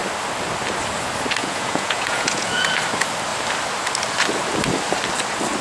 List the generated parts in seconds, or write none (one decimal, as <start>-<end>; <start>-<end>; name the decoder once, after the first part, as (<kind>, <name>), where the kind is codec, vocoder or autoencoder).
1.4-2.7 (vocoder, Vocos)

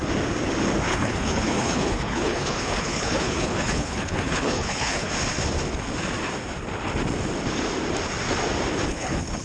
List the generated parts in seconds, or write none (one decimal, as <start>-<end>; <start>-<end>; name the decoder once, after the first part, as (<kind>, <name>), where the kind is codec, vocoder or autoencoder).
0.9-5.1 (codec, HILCodec); 8.9-9.4

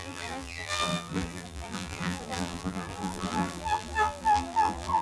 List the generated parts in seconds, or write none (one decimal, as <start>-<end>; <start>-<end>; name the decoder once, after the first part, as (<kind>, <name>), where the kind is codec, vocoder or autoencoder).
0.0-5.0 (vocoder, BigVGAN v2)

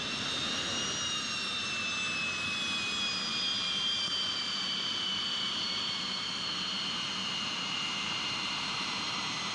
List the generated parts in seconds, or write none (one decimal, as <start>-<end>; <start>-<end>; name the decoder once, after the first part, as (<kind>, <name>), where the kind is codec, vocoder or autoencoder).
0.0-0.4 (vocoder, BigVGAN v2); 3.3-9.5

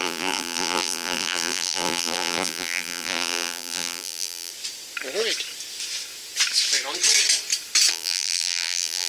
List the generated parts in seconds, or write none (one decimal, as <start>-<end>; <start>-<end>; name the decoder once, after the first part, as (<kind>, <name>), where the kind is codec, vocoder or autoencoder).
0.0-4.5 (vocoder, BigVGAN v2); 7.9-9.1